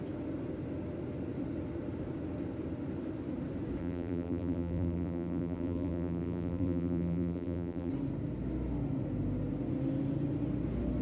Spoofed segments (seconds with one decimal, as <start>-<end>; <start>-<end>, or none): 3.8-7.9